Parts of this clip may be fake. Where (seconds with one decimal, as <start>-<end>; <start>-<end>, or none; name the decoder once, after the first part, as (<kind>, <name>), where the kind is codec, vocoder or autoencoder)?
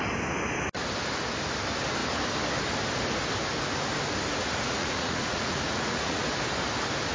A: 4.4-6.2 (vocoder, Vocos)